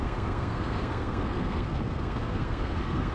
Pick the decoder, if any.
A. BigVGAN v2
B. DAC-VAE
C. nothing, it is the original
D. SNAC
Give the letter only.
D